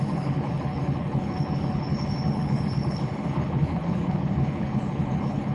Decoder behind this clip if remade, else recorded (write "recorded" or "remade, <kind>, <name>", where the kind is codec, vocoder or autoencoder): remade, codec, HILCodec